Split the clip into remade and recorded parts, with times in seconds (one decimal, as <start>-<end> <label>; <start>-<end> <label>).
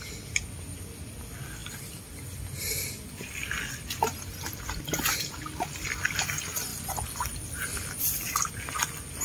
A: 0.0-6.7 recorded; 6.7-8.6 remade; 8.6-9.2 recorded